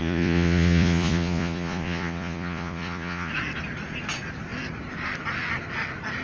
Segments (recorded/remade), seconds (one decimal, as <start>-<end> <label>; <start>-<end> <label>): 0.0-3.3 remade; 3.3-6.2 recorded